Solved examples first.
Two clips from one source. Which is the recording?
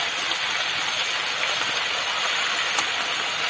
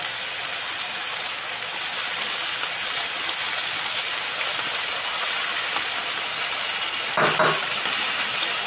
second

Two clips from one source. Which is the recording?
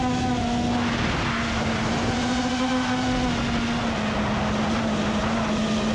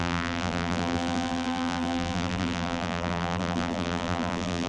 first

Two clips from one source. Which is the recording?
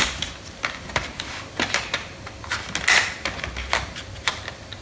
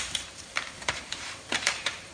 first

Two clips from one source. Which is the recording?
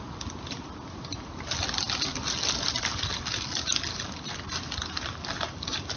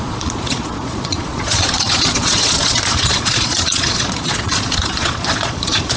first